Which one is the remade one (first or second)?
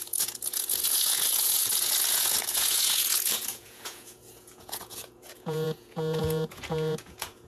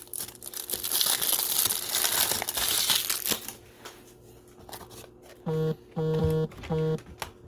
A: first